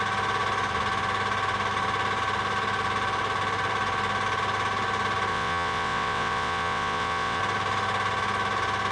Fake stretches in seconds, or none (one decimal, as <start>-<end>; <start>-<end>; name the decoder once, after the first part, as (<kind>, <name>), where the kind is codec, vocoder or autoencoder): 5.3-7.4 (vocoder, WaveNeXt)